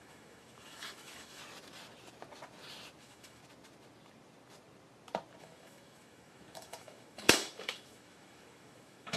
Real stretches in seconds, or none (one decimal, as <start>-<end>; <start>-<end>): 1.4-3.0; 3.4-5.4